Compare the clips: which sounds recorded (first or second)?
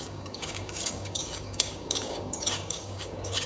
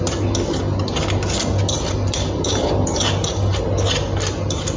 second